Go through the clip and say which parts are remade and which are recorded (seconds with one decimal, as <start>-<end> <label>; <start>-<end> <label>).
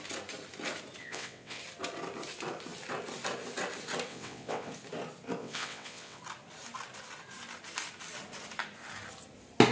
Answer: 0.0-1.0 recorded; 1.0-1.6 remade; 1.6-4.1 recorded; 4.1-4.7 remade; 4.7-5.4 recorded; 5.4-6.2 remade; 6.2-9.7 recorded